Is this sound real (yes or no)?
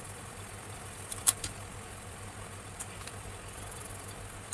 no